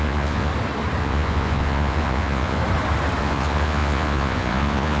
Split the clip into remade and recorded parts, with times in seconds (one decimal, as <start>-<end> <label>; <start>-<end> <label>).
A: 0.0-0.5 remade; 0.5-1.0 recorded; 1.0-2.6 remade; 2.6-3.2 recorded; 3.2-5.0 remade

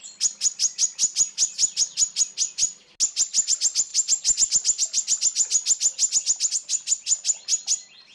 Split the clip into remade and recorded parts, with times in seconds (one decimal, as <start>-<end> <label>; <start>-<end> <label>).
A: 0.0-8.1 recorded

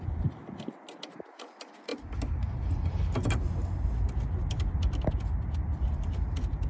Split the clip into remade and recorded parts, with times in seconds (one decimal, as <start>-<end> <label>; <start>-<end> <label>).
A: 0.0-6.7 recorded

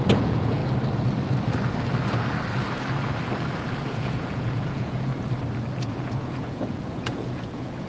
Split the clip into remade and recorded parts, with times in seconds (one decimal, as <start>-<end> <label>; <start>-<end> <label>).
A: 0.0-0.6 remade; 0.6-3.9 recorded; 3.9-5.1 remade; 5.1-5.8 recorded; 5.8-7.9 remade

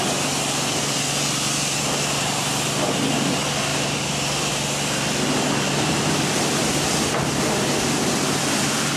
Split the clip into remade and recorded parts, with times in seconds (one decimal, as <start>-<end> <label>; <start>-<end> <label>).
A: 0.0-3.7 recorded; 3.7-4.5 remade; 4.5-9.0 recorded